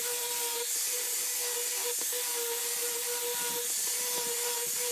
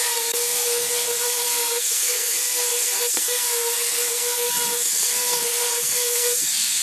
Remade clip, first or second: second